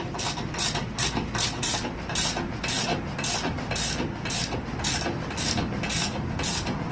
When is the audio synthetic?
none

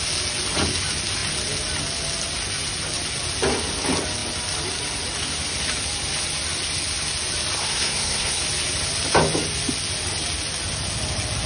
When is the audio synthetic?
7.6-8.4 (codec, SNAC)